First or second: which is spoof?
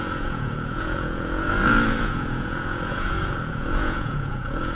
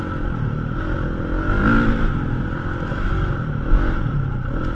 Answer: first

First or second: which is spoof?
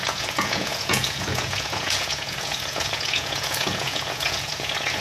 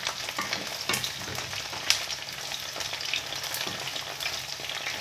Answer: first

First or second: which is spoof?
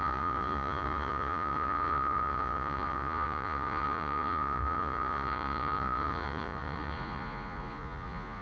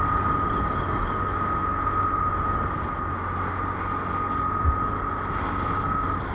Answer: first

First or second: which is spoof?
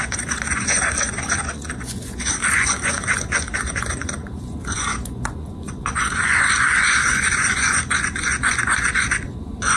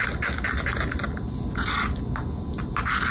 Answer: first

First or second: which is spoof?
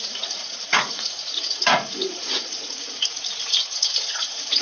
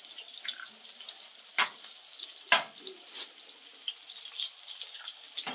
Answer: first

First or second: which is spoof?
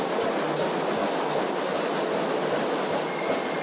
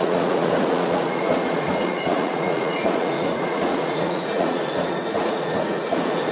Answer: second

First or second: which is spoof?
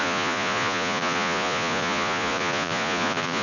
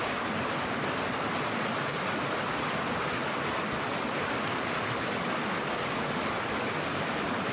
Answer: first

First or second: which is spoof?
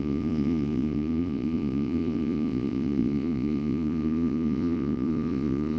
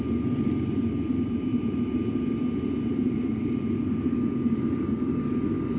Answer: first